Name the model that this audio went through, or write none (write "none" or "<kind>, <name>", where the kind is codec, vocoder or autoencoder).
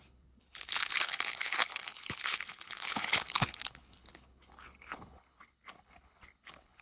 codec, HILCodec